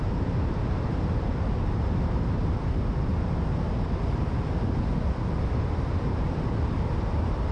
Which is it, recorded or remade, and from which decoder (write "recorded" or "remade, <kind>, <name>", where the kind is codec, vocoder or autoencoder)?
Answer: recorded